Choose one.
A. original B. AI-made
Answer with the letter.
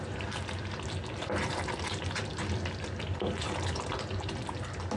A